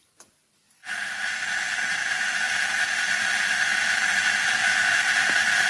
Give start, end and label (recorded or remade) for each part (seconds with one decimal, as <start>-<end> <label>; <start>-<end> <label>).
0.0-5.7 recorded